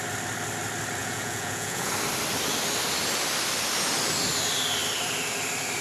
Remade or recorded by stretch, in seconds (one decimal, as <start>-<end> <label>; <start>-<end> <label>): 0.0-1.0 recorded; 1.0-1.9 remade; 1.9-5.8 recorded